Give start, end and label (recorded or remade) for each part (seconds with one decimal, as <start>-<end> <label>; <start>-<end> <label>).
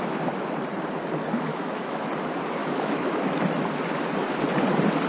0.0-1.5 recorded; 1.5-2.1 remade; 2.1-2.6 recorded; 2.6-3.2 remade; 3.2-5.1 recorded